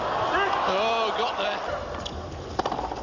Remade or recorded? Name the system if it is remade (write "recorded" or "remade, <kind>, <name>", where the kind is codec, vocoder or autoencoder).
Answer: recorded